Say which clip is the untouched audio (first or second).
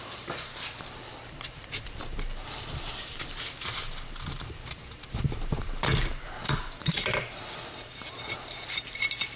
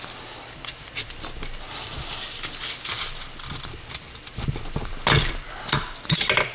second